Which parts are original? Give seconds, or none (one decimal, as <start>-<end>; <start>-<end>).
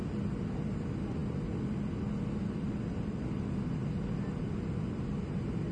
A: 0.0-5.7